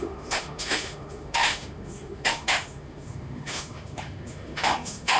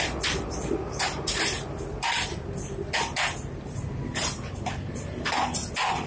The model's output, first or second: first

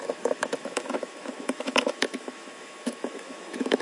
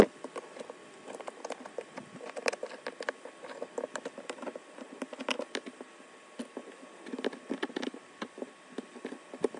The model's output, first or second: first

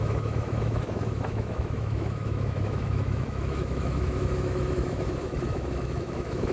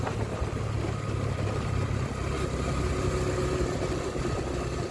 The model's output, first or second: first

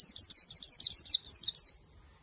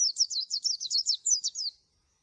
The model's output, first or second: second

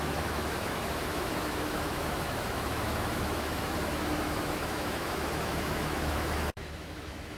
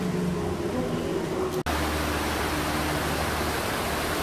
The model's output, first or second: first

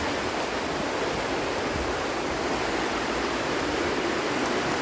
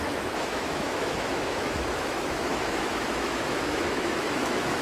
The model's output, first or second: second